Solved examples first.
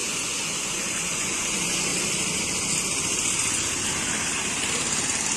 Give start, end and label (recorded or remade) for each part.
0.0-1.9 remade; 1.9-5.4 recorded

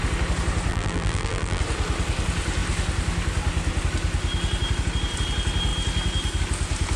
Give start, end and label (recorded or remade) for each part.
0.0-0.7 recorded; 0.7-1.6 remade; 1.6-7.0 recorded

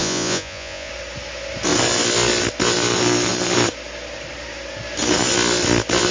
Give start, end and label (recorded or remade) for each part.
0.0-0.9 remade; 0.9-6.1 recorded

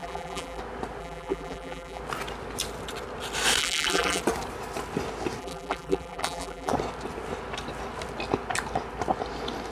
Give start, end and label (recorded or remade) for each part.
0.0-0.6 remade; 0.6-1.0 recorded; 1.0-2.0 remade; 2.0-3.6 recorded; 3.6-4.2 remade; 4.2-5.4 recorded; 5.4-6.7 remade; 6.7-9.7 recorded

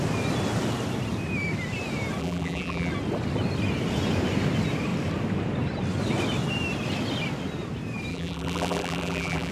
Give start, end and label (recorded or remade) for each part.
0.0-2.2 recorded; 2.2-2.9 remade; 2.9-8.1 recorded; 8.1-9.5 remade

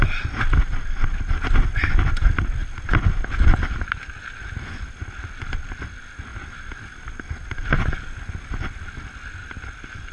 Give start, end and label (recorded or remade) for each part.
0.0-2.6 recorded; 2.6-5.0 remade; 5.0-6.3 recorded; 6.3-8.5 remade; 8.5-9.4 recorded; 9.4-10.1 remade

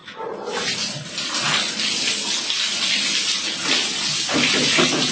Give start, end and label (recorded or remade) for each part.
0.0-5.1 recorded